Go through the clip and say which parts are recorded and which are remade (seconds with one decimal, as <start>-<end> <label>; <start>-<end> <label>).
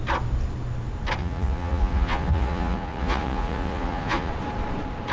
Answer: 0.0-1.2 recorded; 1.2-4.3 remade; 4.3-5.1 recorded